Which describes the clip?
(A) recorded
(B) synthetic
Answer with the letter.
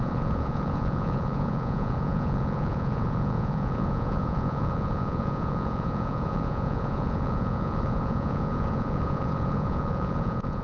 B